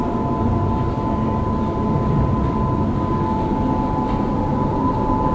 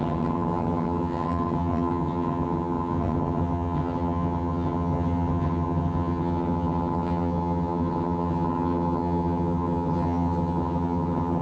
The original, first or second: first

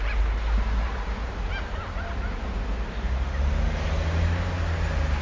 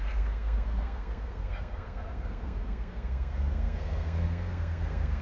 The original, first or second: first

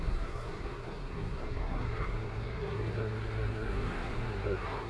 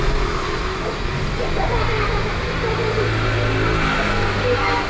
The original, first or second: second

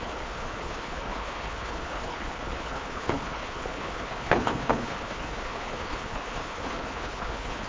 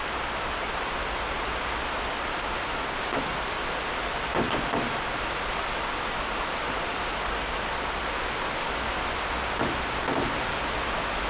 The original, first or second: second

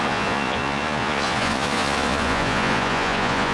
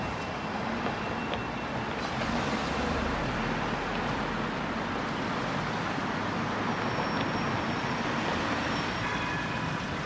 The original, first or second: second